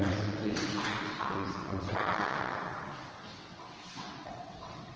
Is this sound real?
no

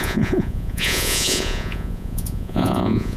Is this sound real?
no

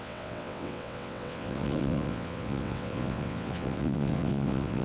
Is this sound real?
no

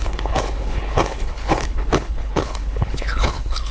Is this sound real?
no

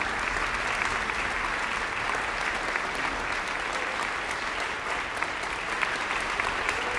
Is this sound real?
yes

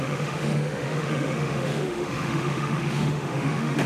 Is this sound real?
no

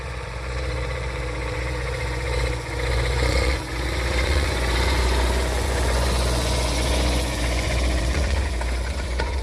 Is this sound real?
no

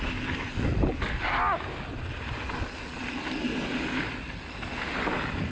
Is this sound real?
yes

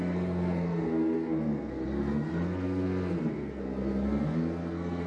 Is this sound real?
no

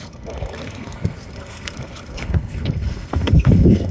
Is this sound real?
no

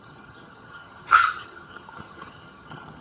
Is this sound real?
no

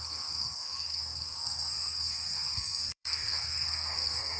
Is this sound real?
no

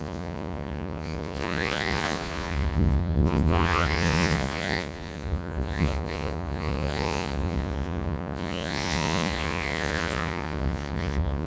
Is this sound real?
no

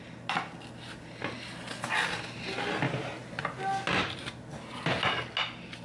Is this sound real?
yes